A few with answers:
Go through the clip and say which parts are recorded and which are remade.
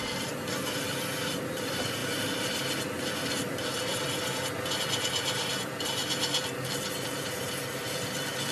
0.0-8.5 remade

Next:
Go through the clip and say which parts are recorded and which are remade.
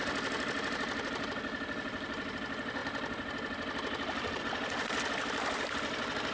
0.0-6.3 recorded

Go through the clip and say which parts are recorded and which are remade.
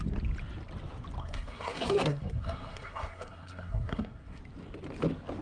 0.0-1.2 recorded; 1.2-4.4 remade; 4.4-5.4 recorded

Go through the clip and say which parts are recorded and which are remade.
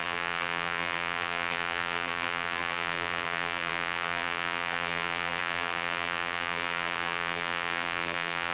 0.0-8.5 remade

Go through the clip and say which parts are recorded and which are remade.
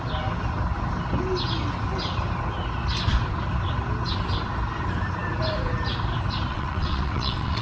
0.0-6.5 recorded; 6.5-7.6 remade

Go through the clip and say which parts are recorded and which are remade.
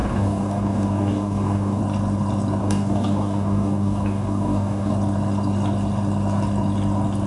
0.0-1.8 remade; 1.8-2.6 recorded; 2.6-4.9 remade; 4.9-7.3 recorded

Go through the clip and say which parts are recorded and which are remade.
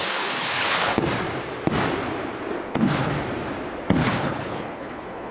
0.0-0.9 remade; 0.9-2.7 recorded; 2.7-3.1 remade; 3.1-4.0 recorded; 4.0-5.3 remade